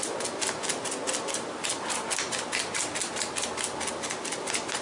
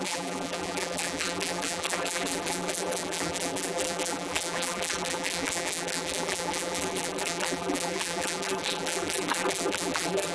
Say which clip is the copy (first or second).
second